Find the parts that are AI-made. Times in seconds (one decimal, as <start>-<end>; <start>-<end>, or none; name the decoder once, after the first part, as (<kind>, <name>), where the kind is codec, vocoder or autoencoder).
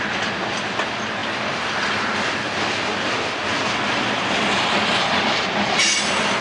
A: none